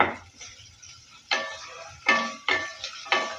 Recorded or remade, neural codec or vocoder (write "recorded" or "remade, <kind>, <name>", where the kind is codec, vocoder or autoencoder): remade, vocoder, BigVGAN v2